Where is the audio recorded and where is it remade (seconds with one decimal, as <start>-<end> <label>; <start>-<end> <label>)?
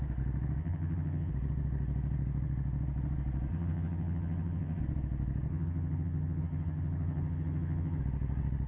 0.0-0.6 recorded; 0.6-1.3 remade; 1.3-3.5 recorded; 3.5-4.8 remade; 4.8-5.5 recorded; 5.5-8.0 remade; 8.0-8.7 recorded